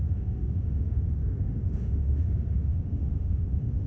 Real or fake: fake